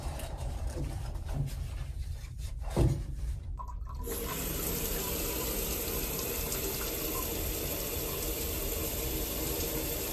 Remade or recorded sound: remade